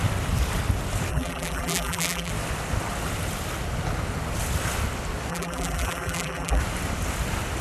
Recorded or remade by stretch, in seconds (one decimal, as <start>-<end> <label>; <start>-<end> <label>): 0.0-1.1 recorded; 1.1-2.3 remade; 2.3-5.3 recorded; 5.3-6.6 remade; 6.6-7.6 recorded